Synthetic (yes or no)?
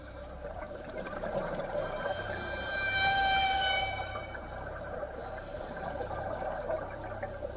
yes